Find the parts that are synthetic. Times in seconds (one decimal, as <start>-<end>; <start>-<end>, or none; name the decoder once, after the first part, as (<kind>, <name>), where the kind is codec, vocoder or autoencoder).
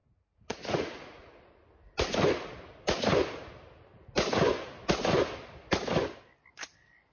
0.0-1.5 (vocoder, Vocos)